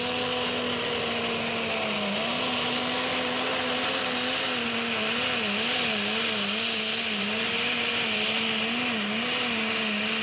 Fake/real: real